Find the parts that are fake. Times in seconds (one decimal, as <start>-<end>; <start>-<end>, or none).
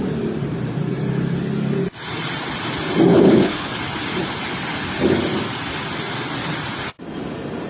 3.1-3.7